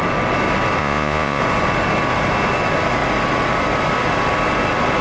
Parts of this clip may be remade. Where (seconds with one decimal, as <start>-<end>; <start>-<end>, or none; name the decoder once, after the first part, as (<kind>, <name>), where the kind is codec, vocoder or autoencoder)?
0.8-1.4 (vocoder, Vocos)